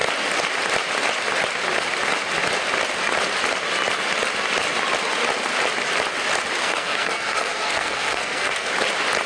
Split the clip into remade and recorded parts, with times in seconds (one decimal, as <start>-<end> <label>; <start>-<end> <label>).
0.0-6.6 recorded; 6.6-8.7 remade; 8.7-9.3 recorded